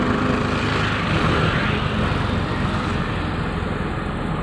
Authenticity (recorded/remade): recorded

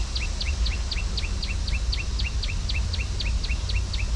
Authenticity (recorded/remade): recorded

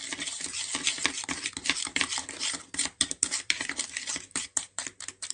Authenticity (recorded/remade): remade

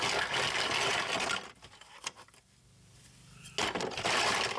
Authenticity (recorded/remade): recorded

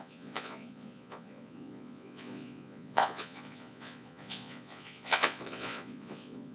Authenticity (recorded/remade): remade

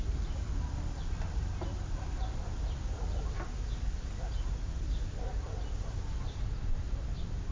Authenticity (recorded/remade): recorded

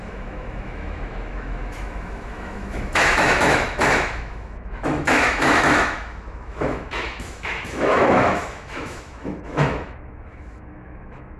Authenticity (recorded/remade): remade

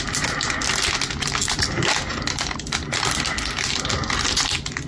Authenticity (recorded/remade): recorded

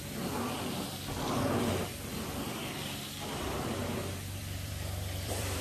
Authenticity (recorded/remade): remade